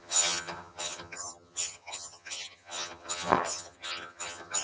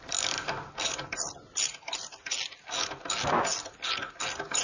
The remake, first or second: first